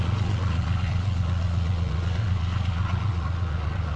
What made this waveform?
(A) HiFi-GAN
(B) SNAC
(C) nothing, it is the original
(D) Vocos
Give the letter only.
D